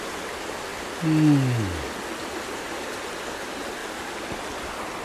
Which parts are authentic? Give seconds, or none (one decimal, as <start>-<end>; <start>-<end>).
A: 0.0-5.0